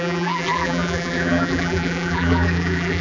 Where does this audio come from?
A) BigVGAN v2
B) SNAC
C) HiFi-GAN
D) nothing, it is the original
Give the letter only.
A